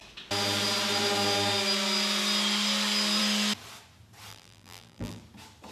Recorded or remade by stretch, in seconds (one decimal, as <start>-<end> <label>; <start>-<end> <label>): 0.0-4.3 recorded; 4.3-5.2 remade; 5.2-5.7 recorded